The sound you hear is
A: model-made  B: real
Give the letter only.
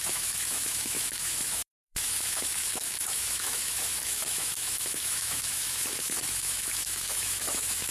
A